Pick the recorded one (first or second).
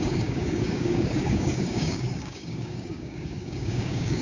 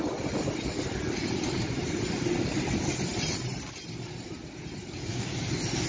second